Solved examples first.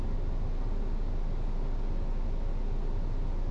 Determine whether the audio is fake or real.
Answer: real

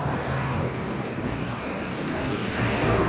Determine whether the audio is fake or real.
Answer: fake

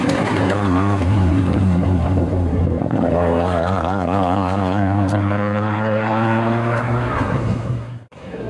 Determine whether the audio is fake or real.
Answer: fake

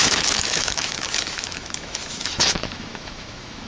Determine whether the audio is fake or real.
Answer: fake